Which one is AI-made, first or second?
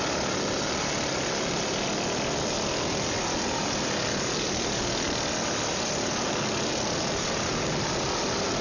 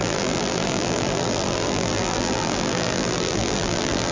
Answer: second